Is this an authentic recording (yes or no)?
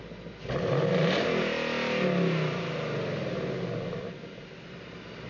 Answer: yes